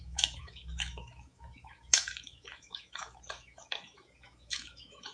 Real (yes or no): no